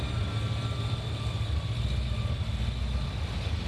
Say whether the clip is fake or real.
real